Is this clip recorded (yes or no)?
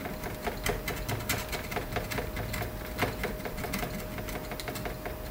yes